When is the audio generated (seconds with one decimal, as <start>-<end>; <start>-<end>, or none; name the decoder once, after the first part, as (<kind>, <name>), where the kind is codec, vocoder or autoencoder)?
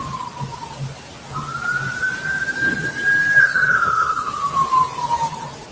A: 3.4-4.3 (codec, SNAC)